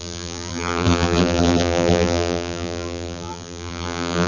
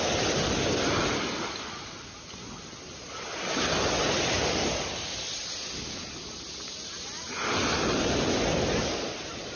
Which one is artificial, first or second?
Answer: first